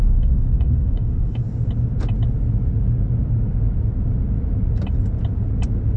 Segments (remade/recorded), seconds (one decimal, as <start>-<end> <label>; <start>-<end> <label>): 0.0-1.4 remade; 1.4-6.0 recorded